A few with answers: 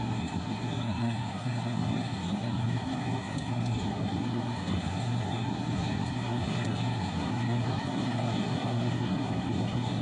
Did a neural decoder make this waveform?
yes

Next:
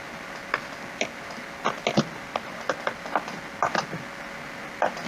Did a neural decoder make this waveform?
no